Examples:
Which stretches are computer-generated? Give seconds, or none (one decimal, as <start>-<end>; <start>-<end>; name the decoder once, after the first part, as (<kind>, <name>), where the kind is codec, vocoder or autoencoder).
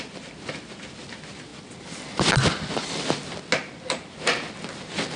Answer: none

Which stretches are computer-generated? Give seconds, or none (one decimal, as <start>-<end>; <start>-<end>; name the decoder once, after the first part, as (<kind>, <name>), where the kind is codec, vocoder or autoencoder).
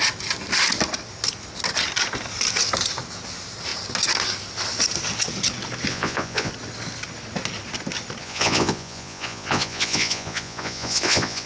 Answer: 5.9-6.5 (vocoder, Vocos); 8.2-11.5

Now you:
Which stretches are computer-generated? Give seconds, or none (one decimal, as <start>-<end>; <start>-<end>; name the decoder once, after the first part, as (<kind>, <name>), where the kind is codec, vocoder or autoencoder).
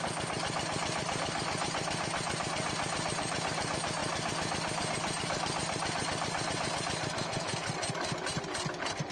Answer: none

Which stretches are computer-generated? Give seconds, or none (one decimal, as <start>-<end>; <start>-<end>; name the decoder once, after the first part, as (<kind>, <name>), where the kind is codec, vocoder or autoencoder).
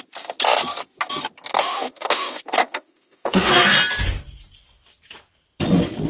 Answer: 1.5-3.5 (autoencoder, DAC-VAE)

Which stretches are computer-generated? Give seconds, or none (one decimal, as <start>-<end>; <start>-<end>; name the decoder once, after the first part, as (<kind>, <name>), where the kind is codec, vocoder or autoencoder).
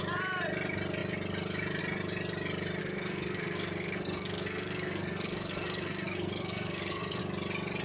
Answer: 2.8-7.2 (codec, SNAC)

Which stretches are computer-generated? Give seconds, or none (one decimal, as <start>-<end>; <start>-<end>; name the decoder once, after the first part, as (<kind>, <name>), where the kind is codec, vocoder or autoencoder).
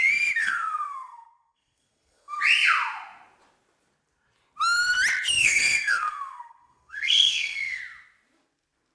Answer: 0.4-2.4 (codec, SNAC); 5.4-7.8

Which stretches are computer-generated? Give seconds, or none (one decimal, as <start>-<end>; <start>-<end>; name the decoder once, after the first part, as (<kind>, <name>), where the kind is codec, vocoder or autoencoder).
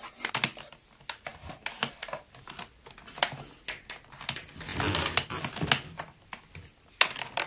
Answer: none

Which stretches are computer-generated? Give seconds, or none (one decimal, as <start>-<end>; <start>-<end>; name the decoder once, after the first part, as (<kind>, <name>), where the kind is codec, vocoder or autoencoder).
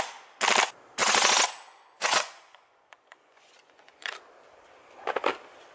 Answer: 1.0-4.1 (vocoder, Vocos)